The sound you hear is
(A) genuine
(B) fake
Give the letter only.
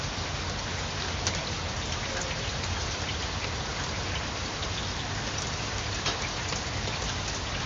A